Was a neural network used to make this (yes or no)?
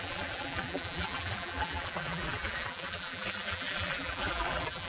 yes